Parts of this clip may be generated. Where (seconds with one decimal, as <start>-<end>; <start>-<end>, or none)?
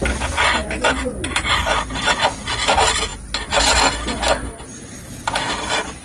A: none